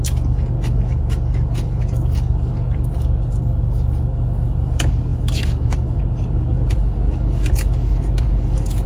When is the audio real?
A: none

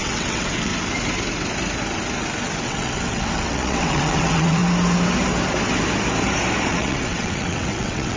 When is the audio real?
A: 0.7-2.6; 4.6-6.7